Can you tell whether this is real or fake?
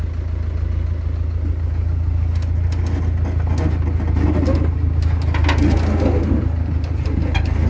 real